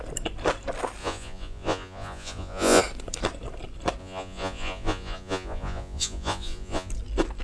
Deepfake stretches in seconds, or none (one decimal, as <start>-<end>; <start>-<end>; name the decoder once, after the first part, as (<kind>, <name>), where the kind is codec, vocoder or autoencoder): 1.0-2.8 (vocoder, Vocos); 4.0-6.9